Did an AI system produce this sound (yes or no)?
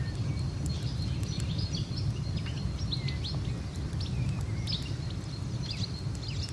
no